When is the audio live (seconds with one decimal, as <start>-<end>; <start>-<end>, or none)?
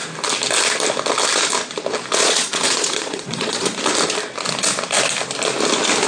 0.0-2.2; 3.8-6.1